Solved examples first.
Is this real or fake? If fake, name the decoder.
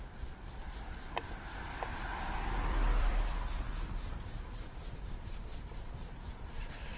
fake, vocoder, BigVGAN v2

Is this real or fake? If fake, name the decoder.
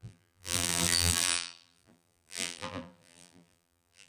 fake, vocoder, BigVGAN v2